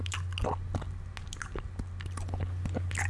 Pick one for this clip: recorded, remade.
recorded